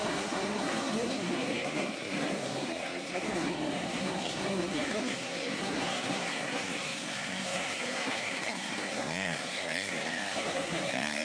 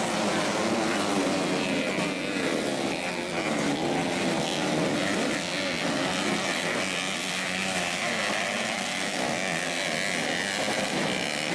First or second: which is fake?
first